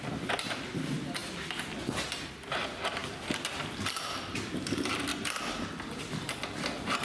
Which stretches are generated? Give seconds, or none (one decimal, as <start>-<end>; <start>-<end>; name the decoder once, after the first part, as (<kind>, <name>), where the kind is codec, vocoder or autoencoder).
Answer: 0.0-1.2 (vocoder, BigVGAN v2); 2.2-5.1; 5.8-7.0